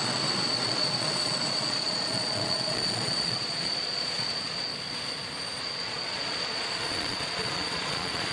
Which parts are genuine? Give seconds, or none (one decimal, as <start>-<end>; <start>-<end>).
4.7-5.6